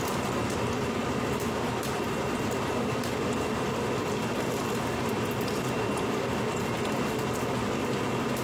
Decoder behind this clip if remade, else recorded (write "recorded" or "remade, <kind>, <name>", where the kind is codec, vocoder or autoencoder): recorded